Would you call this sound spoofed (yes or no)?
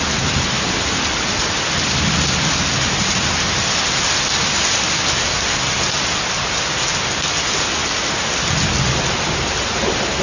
no